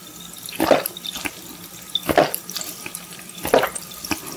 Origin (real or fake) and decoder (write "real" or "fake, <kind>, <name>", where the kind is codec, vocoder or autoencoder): real